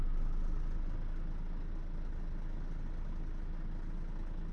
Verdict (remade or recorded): recorded